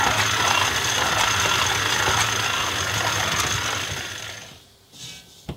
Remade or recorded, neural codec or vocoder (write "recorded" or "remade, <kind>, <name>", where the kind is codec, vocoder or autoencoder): recorded